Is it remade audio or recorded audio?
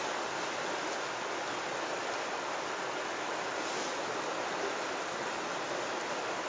recorded